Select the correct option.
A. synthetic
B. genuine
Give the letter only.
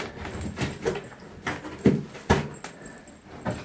B